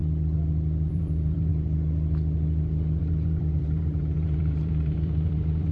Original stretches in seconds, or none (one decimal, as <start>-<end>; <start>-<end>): 0.0-0.9; 1.5-3.0

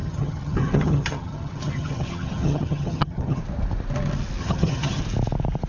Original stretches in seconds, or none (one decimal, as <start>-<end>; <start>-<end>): 3.4-4.4; 5.0-5.7

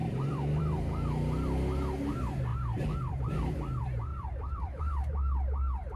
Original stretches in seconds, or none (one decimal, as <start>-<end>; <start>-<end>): 0.6-2.5; 3.2-4.1; 4.8-6.0

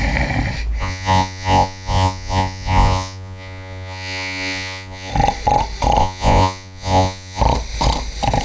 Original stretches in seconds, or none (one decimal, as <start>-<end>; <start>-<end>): 0.0-0.8; 5.1-6.0; 7.4-8.4

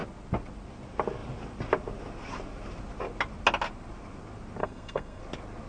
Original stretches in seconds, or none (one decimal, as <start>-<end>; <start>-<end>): 0.0-4.6; 5.2-5.7

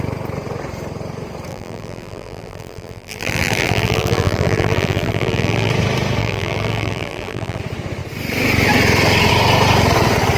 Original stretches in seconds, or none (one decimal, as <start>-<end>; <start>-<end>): 0.0-1.5; 5.7-6.2; 7.6-10.4